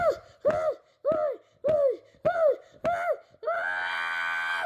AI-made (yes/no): no